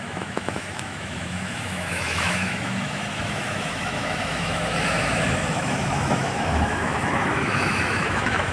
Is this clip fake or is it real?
fake